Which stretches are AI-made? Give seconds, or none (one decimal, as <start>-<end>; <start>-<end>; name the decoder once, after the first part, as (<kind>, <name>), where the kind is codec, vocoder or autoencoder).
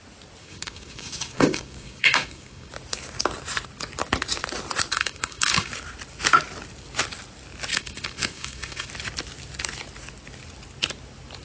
0.4-2.7 (codec, DAC); 4.9-5.7; 7.7-8.9